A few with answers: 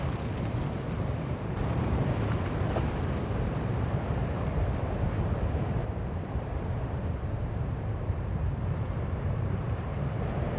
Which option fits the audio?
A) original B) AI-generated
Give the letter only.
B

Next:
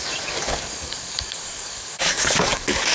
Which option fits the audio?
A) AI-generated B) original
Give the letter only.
A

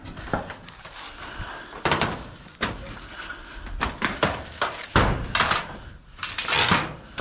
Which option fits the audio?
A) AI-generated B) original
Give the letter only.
B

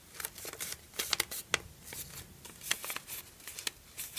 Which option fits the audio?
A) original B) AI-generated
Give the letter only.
A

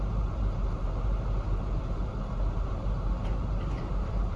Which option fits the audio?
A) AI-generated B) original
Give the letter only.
A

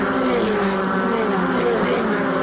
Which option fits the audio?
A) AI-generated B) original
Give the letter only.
B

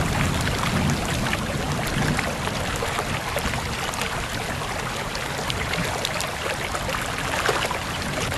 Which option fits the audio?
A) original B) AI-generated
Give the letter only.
A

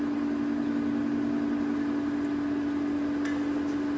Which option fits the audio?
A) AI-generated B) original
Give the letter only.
B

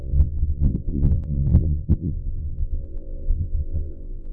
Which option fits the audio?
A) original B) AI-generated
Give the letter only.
B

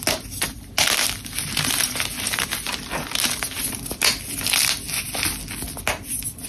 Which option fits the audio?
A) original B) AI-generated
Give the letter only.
A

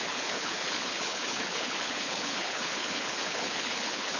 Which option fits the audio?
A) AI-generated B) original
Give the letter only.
A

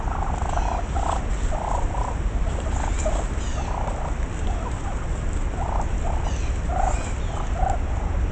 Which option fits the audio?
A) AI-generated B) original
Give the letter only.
B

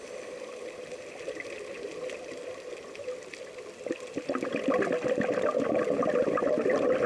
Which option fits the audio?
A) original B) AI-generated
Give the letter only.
A